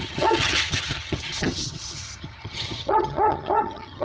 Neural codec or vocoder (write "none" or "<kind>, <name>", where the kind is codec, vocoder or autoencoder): vocoder, HiFi-GAN